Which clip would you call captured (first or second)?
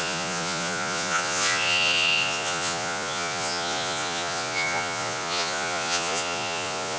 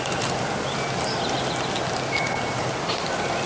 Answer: second